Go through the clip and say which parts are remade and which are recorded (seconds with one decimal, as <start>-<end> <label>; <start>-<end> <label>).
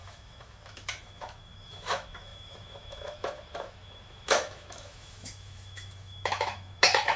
0.0-7.2 remade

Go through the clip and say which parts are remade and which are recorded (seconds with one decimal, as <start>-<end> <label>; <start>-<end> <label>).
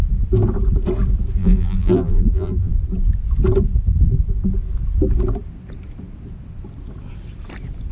0.0-1.4 recorded; 1.4-2.7 remade; 2.7-7.9 recorded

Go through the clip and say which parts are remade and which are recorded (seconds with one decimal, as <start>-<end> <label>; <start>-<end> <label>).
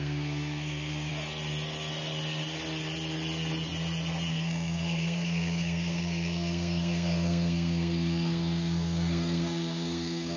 0.0-1.1 remade; 1.1-4.3 recorded; 4.3-10.4 remade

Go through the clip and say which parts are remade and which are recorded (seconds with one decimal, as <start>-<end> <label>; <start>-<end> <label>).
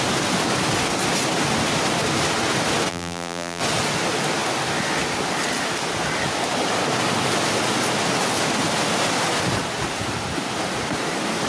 0.0-2.9 recorded; 2.9-3.6 remade; 3.6-11.5 recorded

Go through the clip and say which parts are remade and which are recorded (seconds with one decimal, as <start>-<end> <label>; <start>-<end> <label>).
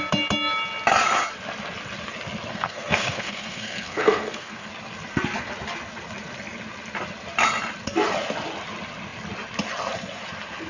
0.0-2.5 recorded; 2.5-4.7 remade; 4.7-10.7 recorded